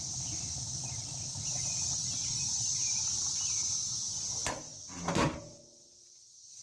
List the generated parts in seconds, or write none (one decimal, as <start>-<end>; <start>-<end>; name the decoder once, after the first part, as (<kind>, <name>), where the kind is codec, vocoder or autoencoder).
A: none